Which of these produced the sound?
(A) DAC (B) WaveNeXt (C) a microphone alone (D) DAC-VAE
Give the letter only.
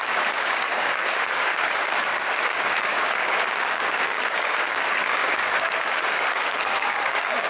A